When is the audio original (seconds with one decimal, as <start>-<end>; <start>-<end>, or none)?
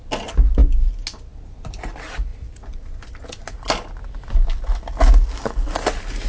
0.0-6.3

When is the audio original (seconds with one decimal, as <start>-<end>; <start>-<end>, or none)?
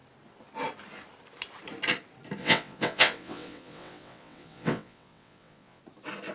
0.0-2.4; 5.8-6.3